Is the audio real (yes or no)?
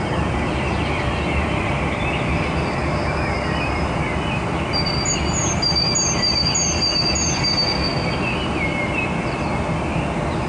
yes